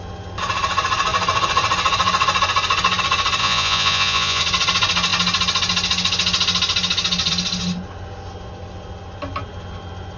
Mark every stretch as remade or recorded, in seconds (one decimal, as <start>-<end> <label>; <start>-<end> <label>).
0.0-3.4 recorded; 3.4-4.4 remade; 4.4-10.2 recorded